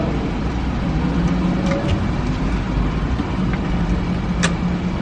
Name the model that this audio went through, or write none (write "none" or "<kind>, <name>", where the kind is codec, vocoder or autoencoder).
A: none